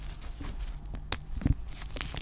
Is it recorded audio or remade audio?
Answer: recorded